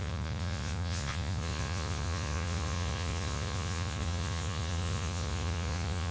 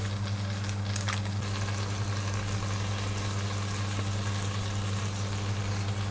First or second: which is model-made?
first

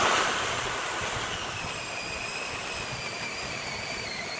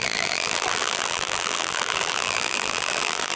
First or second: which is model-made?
second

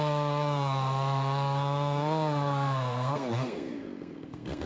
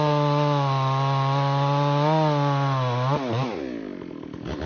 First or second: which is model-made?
first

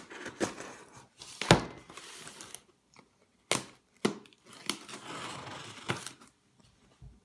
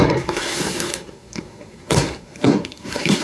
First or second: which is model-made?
second